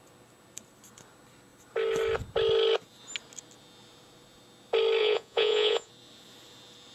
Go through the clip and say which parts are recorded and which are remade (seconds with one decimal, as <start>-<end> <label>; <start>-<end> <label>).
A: 0.0-5.0 recorded; 5.0-5.9 remade; 5.9-6.9 recorded